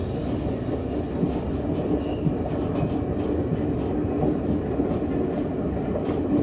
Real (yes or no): yes